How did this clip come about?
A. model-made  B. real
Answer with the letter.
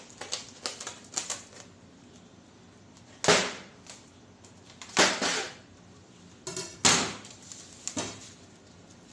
B